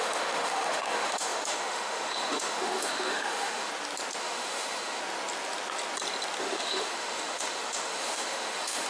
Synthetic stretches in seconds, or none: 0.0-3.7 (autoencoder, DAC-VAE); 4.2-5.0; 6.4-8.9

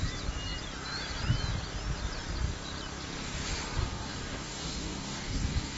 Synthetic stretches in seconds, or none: 3.8-5.8 (codec, DAC)

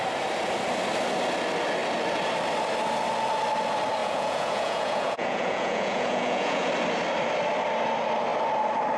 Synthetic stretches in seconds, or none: 4.0-6.7 (vocoder, Vocos)

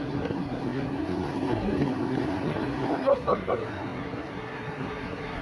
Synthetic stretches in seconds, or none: 0.0-5.4 (codec, SNAC)

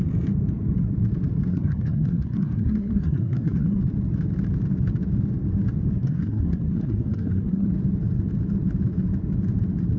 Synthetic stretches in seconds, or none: 1.5-3.8 (codec, SNAC); 6.0-7.7

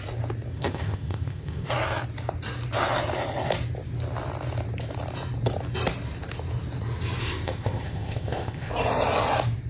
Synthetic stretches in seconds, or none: 0.5-1.7 (codec, ZipCodec); 7.2-8.7

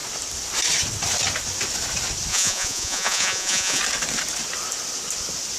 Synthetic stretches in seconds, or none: 2.3-3.8 (vocoder, Vocos)

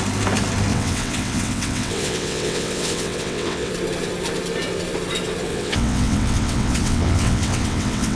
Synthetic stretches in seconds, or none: 0.7-3.7 (vocoder, WaveNeXt); 5.5-8.2